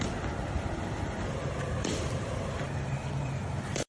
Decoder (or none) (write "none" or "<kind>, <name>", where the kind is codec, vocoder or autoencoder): vocoder, BigVGAN v2